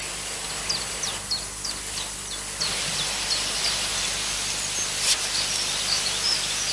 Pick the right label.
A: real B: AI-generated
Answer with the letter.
A